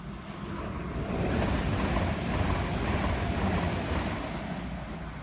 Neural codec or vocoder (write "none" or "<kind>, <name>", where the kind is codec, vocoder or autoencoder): none